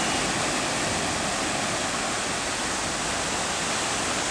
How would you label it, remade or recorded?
recorded